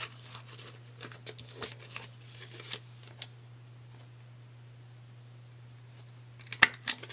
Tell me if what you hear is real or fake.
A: real